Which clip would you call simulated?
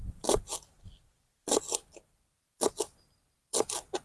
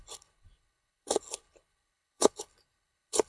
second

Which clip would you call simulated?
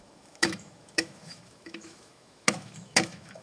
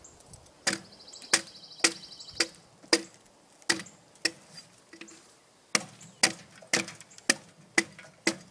first